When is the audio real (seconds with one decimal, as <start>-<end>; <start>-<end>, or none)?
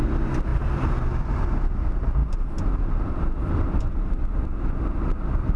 0.0-5.6